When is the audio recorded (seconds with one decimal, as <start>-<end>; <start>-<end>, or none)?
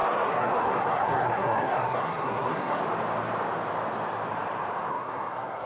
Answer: 2.8-4.9